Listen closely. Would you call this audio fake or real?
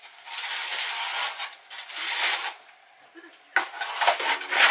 real